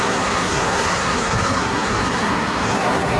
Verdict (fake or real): fake